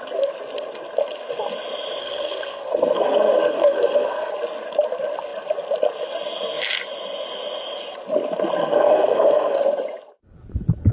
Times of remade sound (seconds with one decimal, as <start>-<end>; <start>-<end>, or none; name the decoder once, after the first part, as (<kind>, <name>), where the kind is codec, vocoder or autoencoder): 2.0-4.3 (codec, SNAC); 8.6-9.6